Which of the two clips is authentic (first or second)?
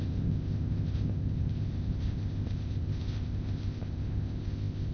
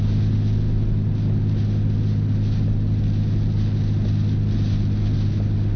second